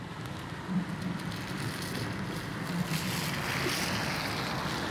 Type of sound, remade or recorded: recorded